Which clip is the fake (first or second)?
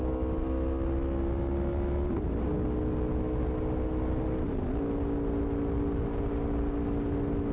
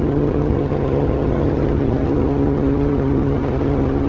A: second